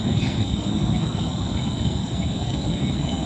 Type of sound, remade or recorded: remade